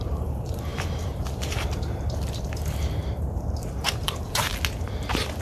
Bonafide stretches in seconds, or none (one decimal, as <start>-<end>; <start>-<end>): 4.5-5.4